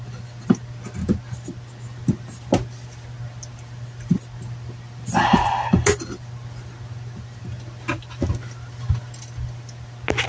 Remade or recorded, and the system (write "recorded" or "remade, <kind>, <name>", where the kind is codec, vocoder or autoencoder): recorded